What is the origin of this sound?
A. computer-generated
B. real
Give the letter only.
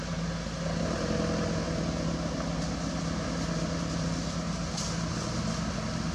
B